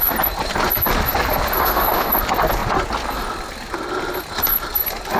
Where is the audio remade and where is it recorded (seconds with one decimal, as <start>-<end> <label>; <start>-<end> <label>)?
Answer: 0.0-1.6 recorded; 1.6-2.1 remade; 2.1-5.2 recorded